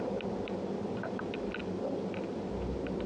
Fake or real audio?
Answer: real